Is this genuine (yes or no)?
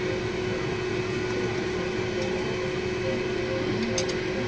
yes